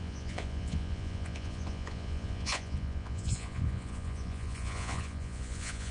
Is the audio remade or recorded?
remade